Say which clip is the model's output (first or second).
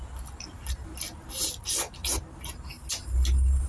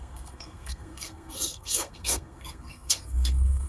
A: second